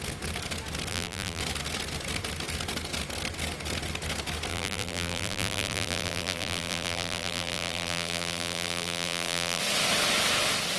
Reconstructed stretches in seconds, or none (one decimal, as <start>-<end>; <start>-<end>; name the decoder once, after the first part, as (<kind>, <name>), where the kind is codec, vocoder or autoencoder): 0.9-1.4 (vocoder, BigVGAN v2); 4.5-9.6

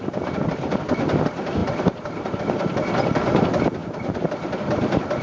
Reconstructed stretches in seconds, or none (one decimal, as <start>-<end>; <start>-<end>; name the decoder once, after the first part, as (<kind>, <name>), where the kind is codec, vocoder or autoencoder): 1.6-2.4 (vocoder, BigVGAN v2); 3.8-4.3

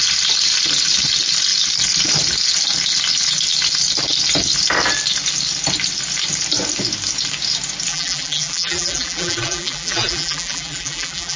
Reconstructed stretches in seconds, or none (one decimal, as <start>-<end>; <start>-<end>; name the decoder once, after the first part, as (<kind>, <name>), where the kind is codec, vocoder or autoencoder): 7.9-11.4 (vocoder, BigVGAN v2)

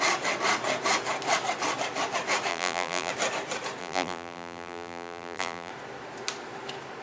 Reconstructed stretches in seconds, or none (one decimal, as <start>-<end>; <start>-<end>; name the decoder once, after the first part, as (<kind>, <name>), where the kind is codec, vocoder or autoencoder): 2.5-3.1 (vocoder, BigVGAN v2); 3.8-5.7

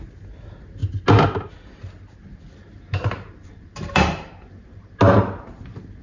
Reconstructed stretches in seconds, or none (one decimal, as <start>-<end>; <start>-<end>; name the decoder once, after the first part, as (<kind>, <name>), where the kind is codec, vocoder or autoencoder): 2.6-4.9 (vocoder, BigVGAN v2)

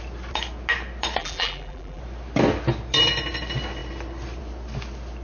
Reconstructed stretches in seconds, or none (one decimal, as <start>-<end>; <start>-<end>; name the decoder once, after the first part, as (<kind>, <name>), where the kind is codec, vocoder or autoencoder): 1.2-2.0 (vocoder, BigVGAN v2)